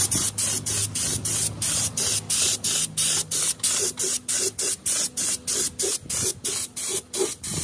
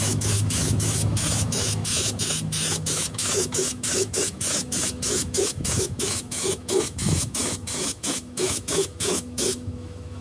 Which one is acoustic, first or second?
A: first